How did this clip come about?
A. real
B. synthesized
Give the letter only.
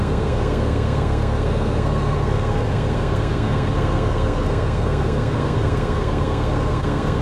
B